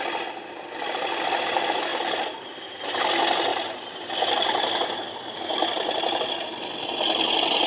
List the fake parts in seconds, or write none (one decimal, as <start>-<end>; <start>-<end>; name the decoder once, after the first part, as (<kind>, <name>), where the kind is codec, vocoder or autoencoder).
1.9-3.0 (vocoder, BigVGAN v2); 3.5-6.3